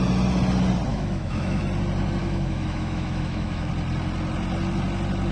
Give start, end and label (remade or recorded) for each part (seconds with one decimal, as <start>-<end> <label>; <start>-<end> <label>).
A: 0.0-0.9 recorded; 0.9-1.6 remade; 1.6-2.2 recorded; 2.2-3.7 remade; 3.7-5.3 recorded